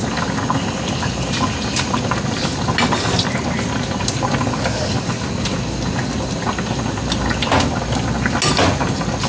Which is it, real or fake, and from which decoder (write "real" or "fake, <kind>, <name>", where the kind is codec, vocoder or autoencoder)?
real